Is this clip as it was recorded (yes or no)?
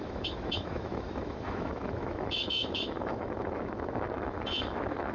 no